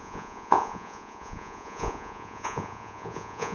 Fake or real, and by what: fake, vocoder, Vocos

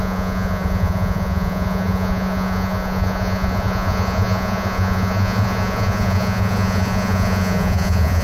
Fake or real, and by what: fake, vocoder, Vocos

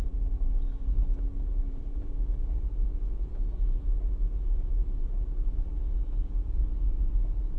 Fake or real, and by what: fake, vocoder, Vocos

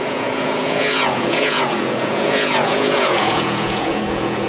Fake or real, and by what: fake, vocoder, Vocos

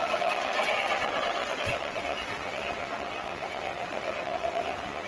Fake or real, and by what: fake, vocoder, WaveNeXt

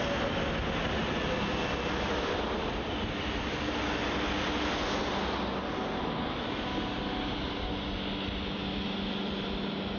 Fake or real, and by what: real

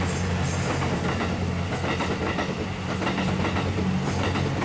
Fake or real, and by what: real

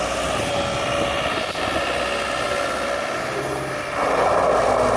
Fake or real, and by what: real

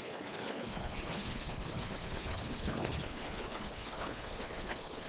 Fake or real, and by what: fake, codec, HILCodec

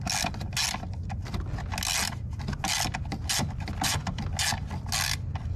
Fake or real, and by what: real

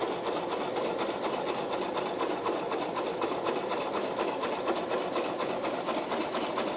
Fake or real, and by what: real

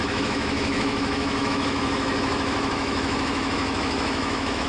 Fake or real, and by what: fake, autoencoder, DAC-VAE